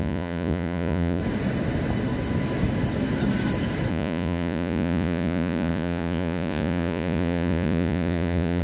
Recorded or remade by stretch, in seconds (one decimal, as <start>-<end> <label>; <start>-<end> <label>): 0.0-1.2 remade; 1.2-3.9 recorded; 3.9-8.6 remade